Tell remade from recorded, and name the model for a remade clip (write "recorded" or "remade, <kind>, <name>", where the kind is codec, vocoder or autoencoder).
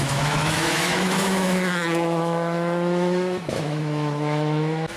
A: remade, autoencoder, DAC-VAE